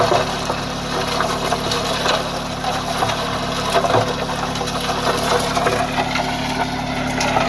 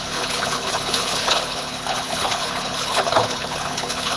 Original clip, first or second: first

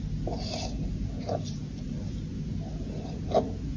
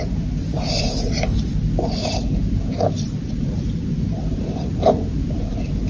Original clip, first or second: first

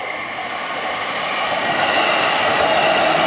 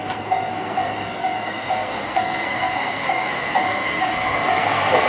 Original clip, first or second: first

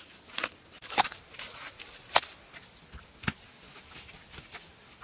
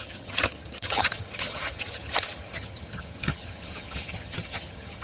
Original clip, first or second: first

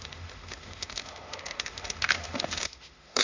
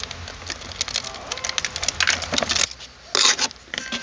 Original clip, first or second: second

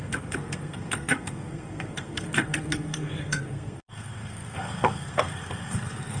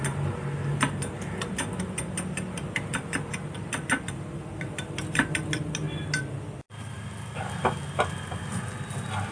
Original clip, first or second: second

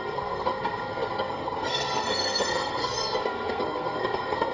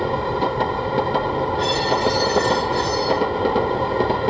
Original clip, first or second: second